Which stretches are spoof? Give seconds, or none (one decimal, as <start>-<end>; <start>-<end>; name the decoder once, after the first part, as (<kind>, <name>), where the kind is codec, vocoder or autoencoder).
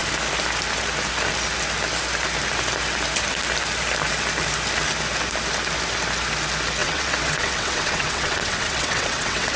6.8-9.6 (vocoder, WaveNeXt)